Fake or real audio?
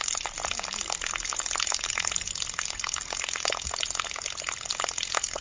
real